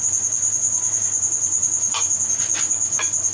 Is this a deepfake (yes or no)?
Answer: yes